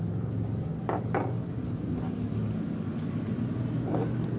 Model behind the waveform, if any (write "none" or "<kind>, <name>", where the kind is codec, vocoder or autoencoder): none